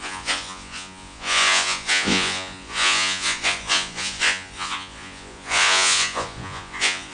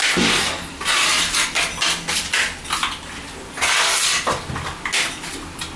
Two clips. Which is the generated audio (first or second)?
first